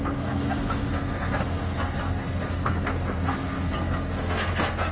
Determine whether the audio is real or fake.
fake